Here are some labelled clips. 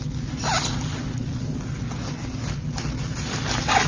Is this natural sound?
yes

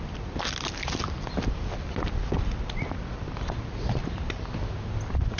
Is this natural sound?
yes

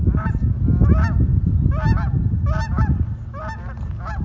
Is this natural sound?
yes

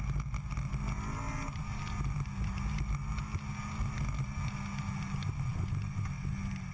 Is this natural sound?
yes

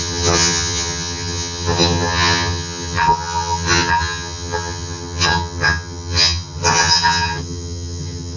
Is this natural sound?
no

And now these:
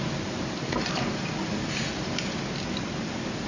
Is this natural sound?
yes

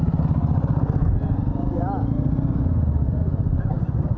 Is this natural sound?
yes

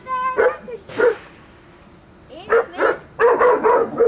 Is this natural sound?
yes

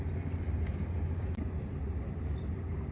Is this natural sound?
yes